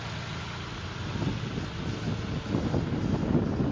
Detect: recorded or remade recorded